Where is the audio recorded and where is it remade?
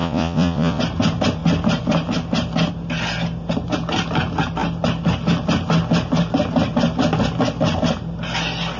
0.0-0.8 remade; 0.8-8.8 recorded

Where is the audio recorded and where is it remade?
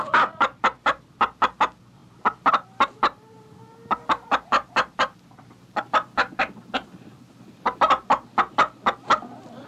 0.0-9.7 recorded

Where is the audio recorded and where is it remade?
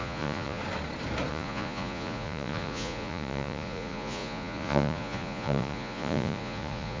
0.0-0.6 remade; 0.6-1.3 recorded; 1.3-7.0 remade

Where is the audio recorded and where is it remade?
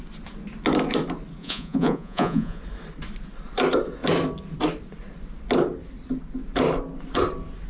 0.0-1.4 recorded; 1.4-2.6 remade; 2.6-7.7 recorded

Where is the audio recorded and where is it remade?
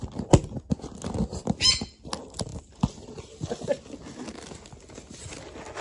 0.0-5.8 recorded